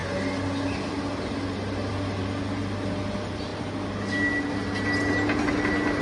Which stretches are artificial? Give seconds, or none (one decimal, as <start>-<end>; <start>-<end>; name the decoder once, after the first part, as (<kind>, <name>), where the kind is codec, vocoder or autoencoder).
none